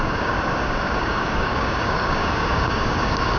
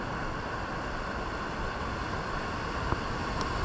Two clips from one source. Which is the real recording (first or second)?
second